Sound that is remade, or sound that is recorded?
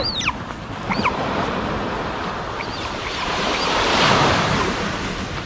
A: remade